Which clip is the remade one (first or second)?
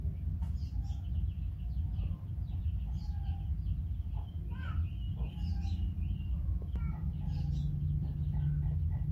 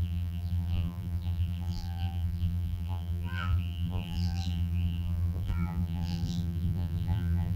second